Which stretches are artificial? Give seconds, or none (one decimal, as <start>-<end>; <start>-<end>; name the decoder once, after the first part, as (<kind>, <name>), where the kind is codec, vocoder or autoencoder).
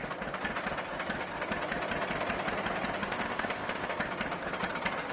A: 3.1-3.9 (codec, ZipCodec)